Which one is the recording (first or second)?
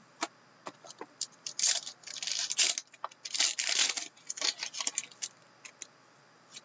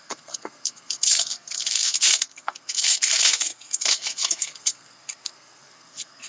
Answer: first